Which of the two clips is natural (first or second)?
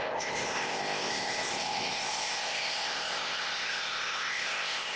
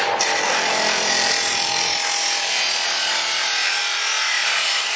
second